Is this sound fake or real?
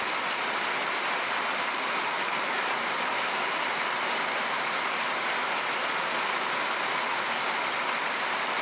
real